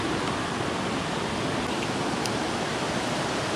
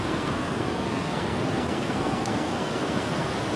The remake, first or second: second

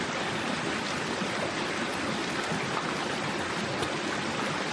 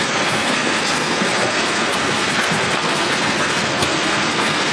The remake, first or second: second